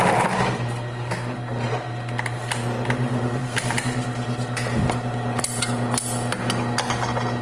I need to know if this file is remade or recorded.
recorded